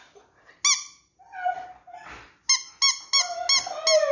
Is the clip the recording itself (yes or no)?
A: yes